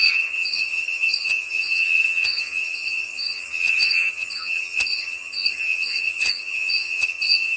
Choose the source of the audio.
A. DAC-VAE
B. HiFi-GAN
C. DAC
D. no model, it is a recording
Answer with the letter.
B